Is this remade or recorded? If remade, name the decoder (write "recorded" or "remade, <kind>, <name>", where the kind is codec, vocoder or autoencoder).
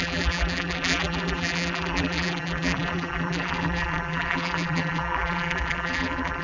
remade, vocoder, BigVGAN v2